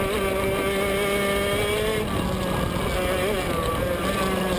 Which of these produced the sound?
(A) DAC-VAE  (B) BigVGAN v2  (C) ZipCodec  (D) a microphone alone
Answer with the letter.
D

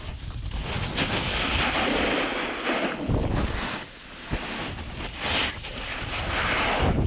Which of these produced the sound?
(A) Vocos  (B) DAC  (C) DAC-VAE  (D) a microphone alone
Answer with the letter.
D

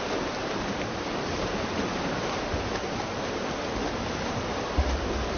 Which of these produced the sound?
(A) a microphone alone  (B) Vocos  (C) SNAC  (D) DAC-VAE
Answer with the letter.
A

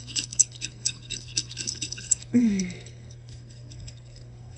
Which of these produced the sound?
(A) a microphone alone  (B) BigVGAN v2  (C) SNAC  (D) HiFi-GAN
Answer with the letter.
C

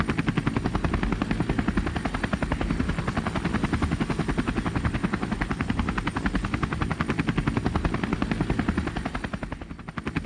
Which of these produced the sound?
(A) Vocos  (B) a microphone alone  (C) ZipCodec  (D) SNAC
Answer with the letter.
B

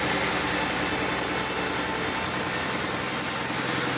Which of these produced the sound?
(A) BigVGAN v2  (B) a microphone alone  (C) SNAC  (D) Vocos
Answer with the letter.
B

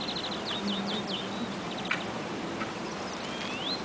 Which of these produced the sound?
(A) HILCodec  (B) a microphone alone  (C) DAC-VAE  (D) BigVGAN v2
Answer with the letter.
B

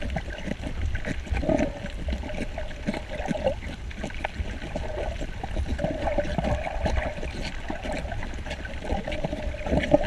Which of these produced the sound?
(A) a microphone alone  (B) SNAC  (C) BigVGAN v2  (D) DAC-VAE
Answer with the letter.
A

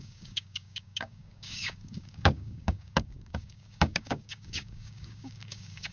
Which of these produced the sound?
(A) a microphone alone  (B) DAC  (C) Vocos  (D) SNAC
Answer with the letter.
B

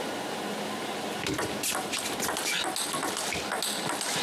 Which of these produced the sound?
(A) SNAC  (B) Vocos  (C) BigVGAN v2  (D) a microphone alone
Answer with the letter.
D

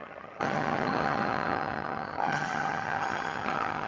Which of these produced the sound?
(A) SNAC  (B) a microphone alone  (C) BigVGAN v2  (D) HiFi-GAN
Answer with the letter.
D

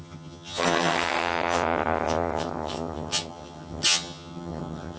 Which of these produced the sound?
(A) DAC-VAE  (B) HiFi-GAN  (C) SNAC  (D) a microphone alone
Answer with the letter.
B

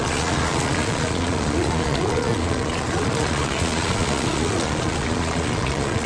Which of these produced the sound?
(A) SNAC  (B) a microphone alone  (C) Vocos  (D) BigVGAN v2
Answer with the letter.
C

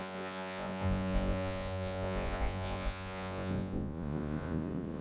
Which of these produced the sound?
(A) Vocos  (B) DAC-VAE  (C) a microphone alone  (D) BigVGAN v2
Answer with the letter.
A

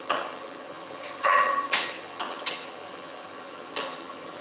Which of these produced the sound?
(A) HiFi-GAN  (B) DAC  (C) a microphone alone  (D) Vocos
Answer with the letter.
A